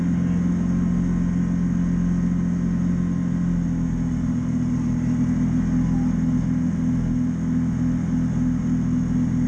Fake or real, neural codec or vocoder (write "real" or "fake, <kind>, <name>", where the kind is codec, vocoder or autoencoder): real